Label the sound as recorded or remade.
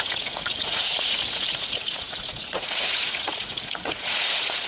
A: remade